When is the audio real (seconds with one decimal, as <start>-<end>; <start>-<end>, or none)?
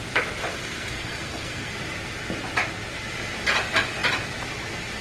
0.0-0.5; 1.7-5.0